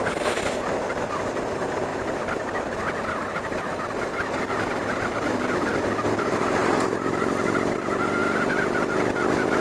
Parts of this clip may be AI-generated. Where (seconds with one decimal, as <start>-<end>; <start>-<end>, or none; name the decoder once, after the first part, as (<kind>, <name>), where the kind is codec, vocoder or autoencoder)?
1.9-3.3 (vocoder, BigVGAN v2)